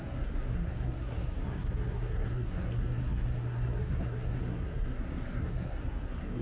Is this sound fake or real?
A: fake